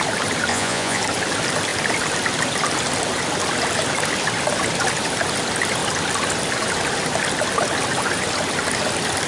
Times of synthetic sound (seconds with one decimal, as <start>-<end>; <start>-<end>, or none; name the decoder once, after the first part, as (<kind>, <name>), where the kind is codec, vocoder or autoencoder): 0.5-1.0 (vocoder, Vocos)